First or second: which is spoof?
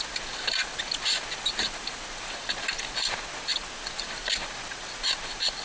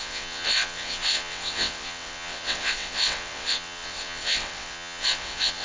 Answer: second